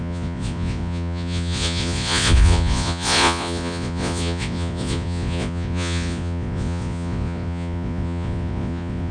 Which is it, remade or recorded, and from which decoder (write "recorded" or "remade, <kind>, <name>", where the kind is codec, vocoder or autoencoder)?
remade, vocoder, Vocos